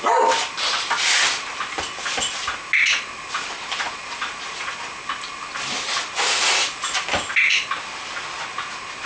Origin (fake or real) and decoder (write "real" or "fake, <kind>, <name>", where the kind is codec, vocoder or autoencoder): real